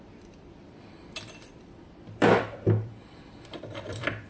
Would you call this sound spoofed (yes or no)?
yes